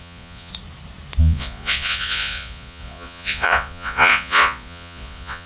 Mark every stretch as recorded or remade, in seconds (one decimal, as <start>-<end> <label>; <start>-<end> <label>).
0.0-0.5 remade; 0.5-1.2 recorded; 1.2-5.5 remade